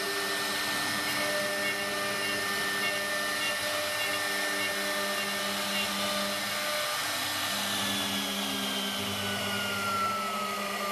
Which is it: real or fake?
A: real